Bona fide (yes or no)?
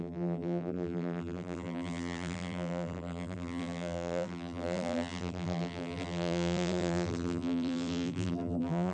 no